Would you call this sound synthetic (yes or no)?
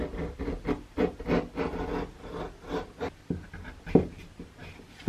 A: no